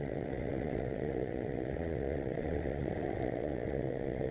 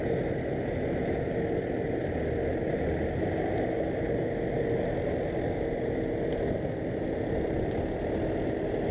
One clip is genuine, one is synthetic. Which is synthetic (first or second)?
first